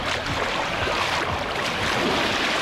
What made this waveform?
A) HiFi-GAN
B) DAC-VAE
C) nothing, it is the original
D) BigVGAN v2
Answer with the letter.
C